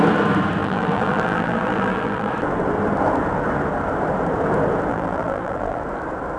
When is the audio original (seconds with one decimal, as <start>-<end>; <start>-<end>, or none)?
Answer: 0.0-0.6; 2.3-4.9; 5.8-6.4